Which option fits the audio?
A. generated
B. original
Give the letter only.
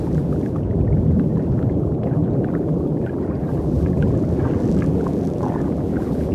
A